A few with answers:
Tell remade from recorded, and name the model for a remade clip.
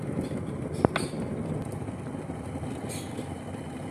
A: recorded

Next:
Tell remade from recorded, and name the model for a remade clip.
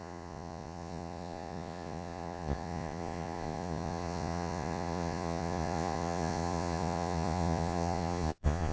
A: remade, vocoder, Vocos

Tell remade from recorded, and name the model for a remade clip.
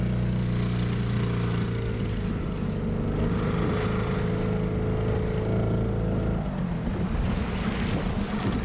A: recorded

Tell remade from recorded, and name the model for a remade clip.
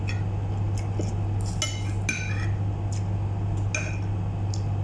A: recorded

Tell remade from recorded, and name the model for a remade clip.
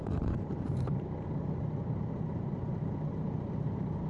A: remade, vocoder, BigVGAN v2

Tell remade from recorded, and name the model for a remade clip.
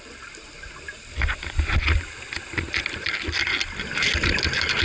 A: recorded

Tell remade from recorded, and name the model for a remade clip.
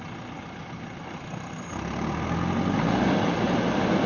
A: recorded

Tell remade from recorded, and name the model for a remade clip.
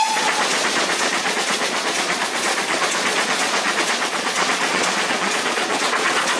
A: remade, vocoder, Vocos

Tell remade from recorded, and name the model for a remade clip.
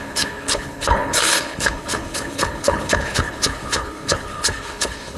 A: remade, codec, HILCodec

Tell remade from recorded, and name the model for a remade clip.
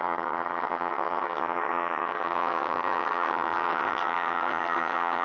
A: remade, vocoder, HiFi-GAN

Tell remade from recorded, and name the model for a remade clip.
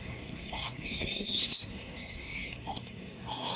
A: remade, codec, SNAC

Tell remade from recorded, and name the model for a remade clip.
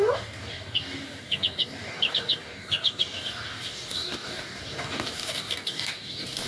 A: remade, codec, DAC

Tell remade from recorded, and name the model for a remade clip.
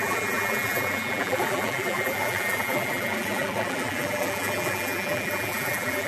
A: remade, vocoder, BigVGAN v2